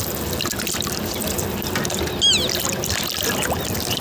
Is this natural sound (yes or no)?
yes